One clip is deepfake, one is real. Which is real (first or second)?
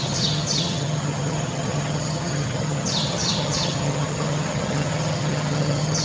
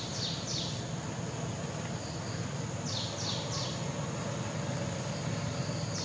second